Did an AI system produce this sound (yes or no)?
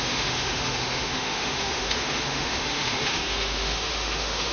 yes